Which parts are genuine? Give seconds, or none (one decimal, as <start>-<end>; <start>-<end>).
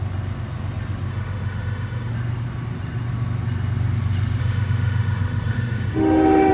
0.0-1.1; 2.1-4.4